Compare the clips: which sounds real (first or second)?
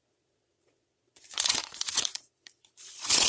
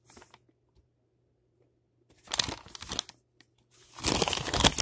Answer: second